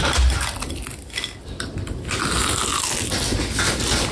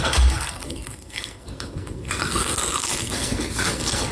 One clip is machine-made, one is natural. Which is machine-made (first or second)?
second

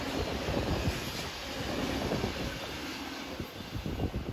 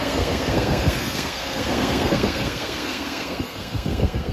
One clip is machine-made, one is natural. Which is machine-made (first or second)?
second